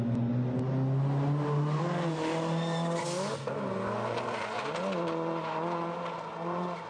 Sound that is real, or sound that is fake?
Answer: real